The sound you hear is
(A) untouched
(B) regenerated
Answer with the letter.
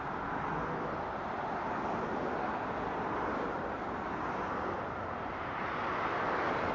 A